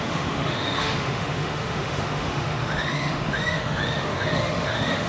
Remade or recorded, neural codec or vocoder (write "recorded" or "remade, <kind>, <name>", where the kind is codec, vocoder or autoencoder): remade, autoencoder, DAC-VAE